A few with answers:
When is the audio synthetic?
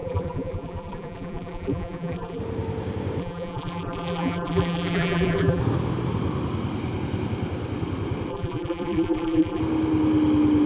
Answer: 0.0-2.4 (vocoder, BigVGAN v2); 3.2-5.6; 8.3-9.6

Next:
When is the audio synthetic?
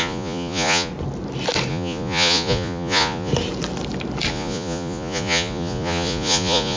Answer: 0.0-0.9 (vocoder, Vocos); 1.7-3.3; 4.3-6.8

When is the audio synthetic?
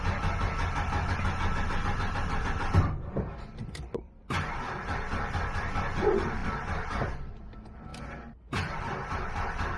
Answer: none